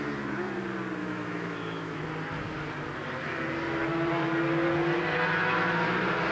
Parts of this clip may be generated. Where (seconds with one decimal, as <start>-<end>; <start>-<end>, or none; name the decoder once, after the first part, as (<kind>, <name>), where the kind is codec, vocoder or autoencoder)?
1.0-2.0 (autoencoder, DAC-VAE)